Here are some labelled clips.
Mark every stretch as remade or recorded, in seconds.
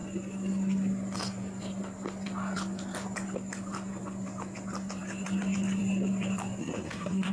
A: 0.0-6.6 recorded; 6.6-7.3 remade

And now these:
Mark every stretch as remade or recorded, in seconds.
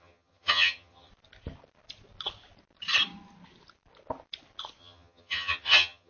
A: 0.0-1.1 remade; 1.1-4.8 recorded; 4.8-6.1 remade